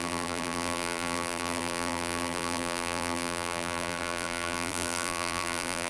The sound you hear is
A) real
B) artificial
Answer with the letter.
B